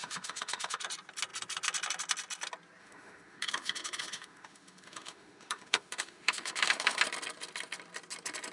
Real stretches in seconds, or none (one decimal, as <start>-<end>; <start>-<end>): 0.8-2.8; 7.0-8.5